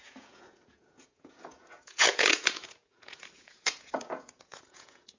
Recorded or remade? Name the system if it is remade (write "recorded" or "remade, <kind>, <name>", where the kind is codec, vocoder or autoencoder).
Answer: remade, vocoder, Vocos